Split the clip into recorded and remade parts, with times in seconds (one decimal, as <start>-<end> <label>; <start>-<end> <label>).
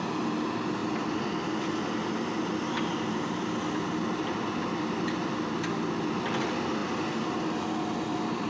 0.0-8.5 recorded